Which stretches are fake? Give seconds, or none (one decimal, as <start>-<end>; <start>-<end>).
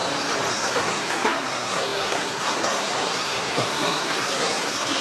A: 0.5-5.0